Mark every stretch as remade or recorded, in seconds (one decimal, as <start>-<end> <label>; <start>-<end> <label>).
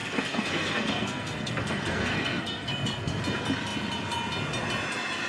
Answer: 0.0-3.2 remade; 3.2-5.3 recorded